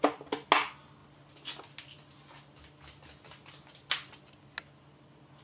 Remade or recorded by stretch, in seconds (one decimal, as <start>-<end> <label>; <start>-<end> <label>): 0.0-5.4 recorded